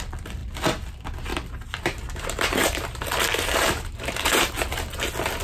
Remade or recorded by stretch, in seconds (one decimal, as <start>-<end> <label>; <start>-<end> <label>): 0.0-1.3 recorded; 1.3-4.5 remade; 4.5-5.4 recorded